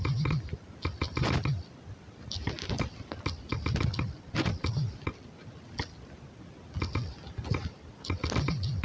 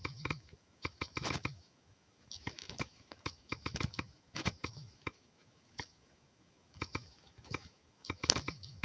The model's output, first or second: second